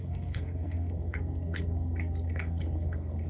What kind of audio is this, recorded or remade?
remade